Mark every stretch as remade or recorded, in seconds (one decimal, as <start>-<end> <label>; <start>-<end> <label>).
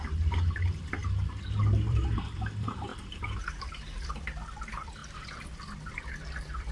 0.0-1.0 remade; 1.0-1.6 recorded; 1.6-2.9 remade; 2.9-3.7 recorded; 3.7-6.7 remade